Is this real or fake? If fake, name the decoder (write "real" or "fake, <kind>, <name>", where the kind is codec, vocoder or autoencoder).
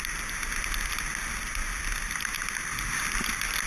real